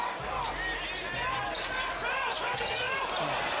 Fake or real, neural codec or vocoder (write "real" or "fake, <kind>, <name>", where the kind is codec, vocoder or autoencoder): real